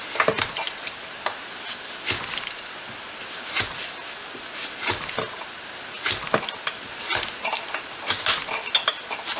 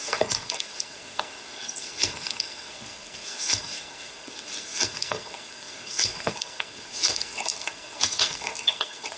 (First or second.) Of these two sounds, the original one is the first